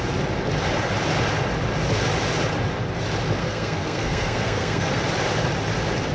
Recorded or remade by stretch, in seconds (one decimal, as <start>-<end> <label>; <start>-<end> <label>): 0.0-3.4 recorded; 3.4-5.0 remade; 5.0-6.1 recorded